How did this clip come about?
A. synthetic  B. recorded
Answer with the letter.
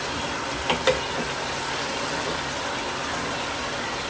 B